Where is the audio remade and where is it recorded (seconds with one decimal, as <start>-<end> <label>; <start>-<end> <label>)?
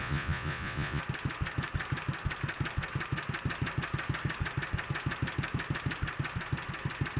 0.0-1.0 remade; 1.0-7.2 recorded